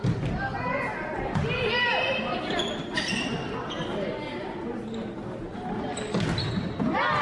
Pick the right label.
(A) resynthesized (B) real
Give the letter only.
B